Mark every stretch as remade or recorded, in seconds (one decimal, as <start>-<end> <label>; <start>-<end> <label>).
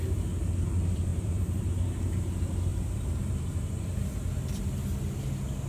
0.0-1.1 recorded; 1.1-1.8 remade; 1.8-2.7 recorded; 2.7-4.6 remade; 4.6-5.7 recorded